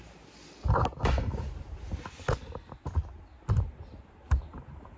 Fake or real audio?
real